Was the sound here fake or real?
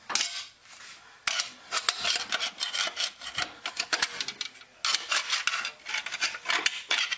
real